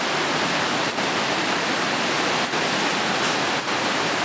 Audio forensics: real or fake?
real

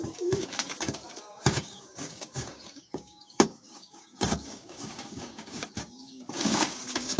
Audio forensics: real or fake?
fake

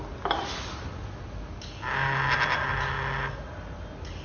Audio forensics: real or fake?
real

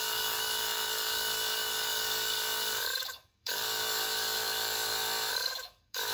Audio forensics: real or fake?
fake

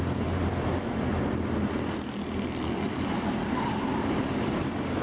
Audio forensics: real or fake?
real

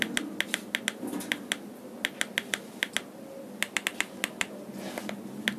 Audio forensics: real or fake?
real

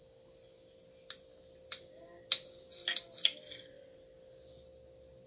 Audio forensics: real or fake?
real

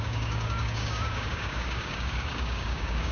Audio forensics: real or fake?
fake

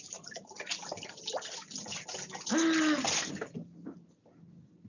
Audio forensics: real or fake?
real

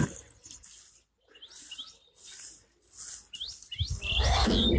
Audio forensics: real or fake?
real